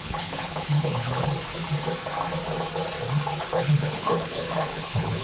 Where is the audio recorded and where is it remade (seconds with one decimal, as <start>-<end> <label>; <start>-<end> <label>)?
0.0-1.3 remade; 1.3-3.4 recorded; 3.4-5.2 remade